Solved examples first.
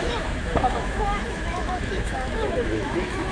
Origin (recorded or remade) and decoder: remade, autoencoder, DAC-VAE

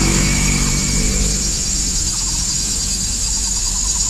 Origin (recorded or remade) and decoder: remade, autoencoder, DAC-VAE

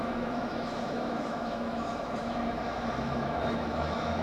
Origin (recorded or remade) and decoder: remade, autoencoder, DAC-VAE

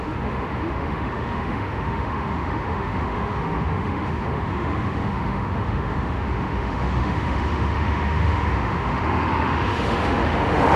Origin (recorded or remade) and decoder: remade, autoencoder, DAC-VAE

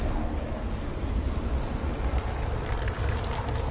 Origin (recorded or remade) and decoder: recorded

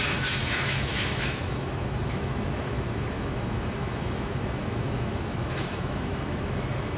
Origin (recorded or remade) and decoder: remade, autoencoder, DAC-VAE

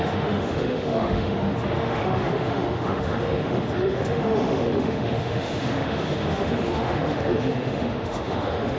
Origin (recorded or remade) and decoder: remade, autoencoder, DAC-VAE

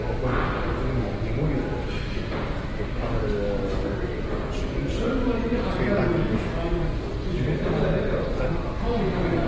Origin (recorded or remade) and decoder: recorded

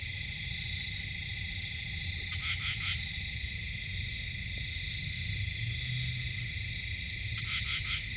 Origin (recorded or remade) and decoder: recorded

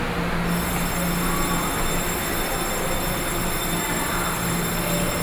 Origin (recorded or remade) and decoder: recorded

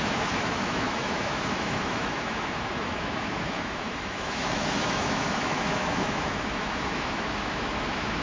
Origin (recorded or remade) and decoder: remade, autoencoder, DAC-VAE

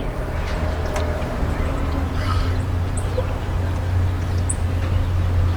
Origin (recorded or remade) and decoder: recorded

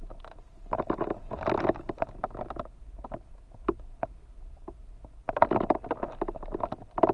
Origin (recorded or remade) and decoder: recorded